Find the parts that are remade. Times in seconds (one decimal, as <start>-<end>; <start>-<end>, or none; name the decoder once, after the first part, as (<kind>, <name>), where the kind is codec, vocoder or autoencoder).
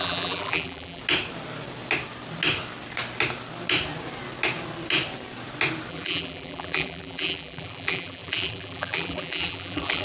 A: 0.0-1.0 (vocoder, BigVGAN v2); 5.9-10.0